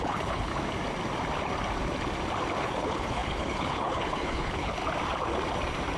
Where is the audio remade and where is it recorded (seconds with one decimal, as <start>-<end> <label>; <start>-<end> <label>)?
0.0-0.5 remade; 0.5-2.6 recorded; 2.6-4.8 remade; 4.8-6.0 recorded